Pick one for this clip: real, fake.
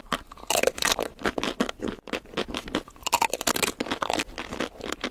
real